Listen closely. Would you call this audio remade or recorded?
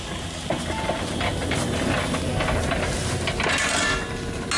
recorded